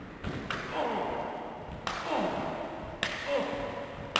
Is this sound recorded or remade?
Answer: recorded